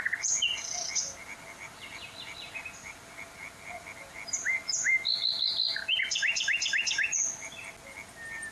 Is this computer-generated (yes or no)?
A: no